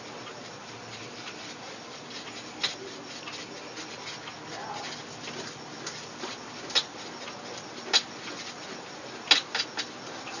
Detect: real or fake real